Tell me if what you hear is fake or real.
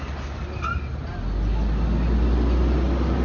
real